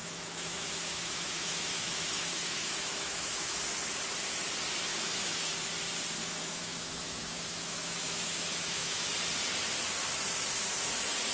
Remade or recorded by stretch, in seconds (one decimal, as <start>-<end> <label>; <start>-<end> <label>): 0.0-3.6 remade; 3.6-4.9 recorded; 4.9-5.5 remade; 5.5-6.2 recorded; 6.2-9.1 remade; 9.1-11.3 recorded